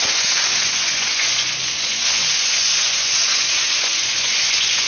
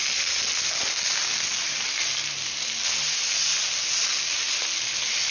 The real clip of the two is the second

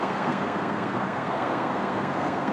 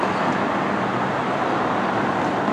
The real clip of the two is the second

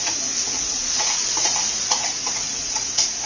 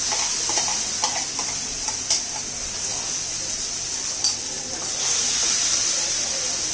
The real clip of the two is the second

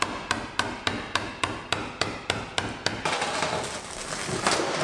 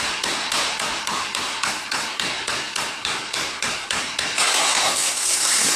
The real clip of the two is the first